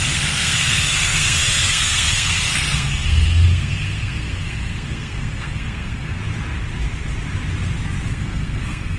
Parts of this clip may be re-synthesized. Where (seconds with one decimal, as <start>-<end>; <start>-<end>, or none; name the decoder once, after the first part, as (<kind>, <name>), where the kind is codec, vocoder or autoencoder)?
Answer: 0.0-6.2 (codec, SNAC); 8.1-9.0